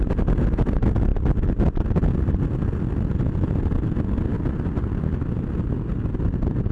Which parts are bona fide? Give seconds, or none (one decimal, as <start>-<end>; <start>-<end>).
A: 0.0-6.7